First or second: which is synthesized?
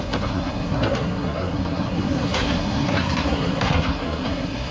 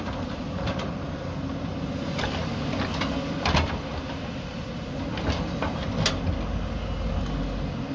first